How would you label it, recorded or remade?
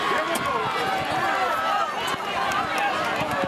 recorded